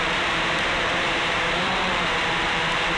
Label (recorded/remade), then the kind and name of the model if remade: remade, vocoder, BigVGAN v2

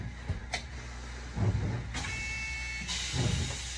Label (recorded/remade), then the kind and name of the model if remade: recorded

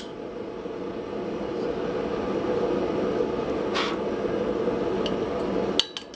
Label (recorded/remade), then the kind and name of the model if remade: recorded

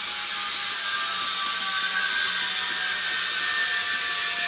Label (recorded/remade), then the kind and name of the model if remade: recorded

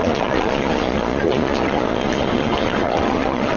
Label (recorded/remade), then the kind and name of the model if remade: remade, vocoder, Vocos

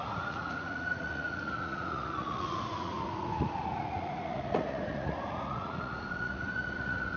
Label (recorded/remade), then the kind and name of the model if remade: remade, vocoder, Vocos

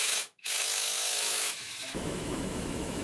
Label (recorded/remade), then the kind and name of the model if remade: remade, autoencoder, DAC-VAE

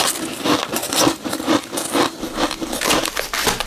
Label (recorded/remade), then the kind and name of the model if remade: recorded